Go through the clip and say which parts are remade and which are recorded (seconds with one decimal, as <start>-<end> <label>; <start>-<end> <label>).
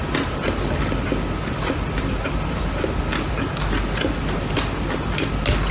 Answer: 0.0-5.7 recorded